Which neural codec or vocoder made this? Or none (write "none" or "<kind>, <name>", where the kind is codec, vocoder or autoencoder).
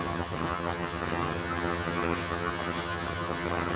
vocoder, HiFi-GAN